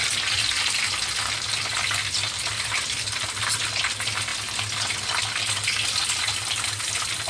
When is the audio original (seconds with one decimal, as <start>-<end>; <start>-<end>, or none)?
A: 0.9-7.3